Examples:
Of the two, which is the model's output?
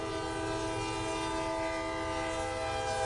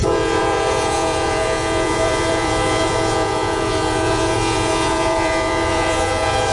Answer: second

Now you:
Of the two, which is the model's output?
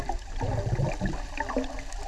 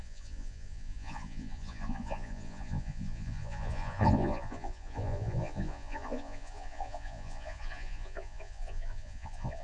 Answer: second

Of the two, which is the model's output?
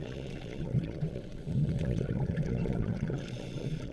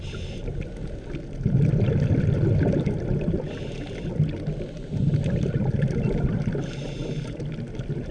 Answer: first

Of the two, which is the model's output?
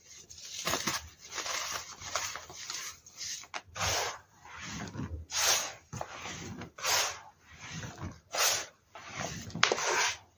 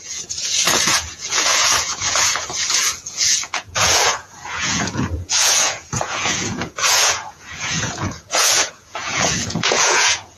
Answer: second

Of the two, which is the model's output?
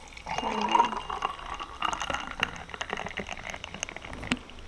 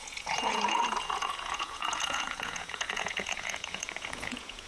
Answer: second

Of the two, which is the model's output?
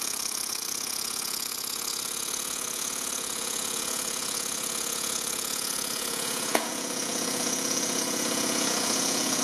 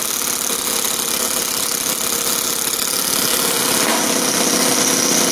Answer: first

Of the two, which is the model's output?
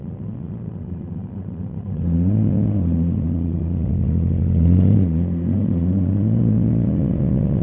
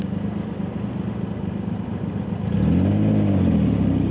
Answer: first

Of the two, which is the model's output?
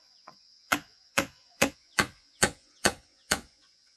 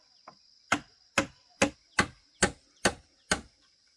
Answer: first